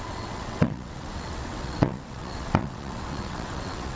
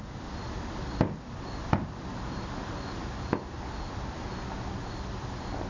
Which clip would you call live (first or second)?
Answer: second